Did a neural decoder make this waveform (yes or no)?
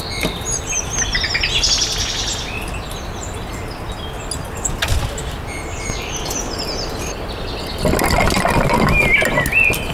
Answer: no